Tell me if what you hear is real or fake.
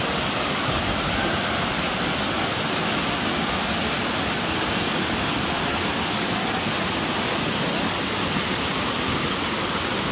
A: real